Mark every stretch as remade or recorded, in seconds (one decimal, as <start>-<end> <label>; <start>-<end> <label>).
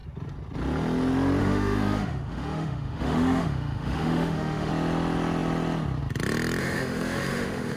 0.0-1.4 recorded; 1.4-4.7 remade; 4.7-6.6 recorded; 6.6-7.8 remade